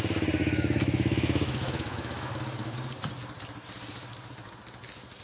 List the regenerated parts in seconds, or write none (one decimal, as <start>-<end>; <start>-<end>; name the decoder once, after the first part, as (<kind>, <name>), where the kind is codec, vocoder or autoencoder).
0.4-2.4 (autoencoder, DAC-VAE)